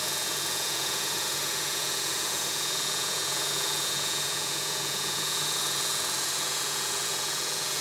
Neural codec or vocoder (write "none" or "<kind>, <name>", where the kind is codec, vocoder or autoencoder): vocoder, Vocos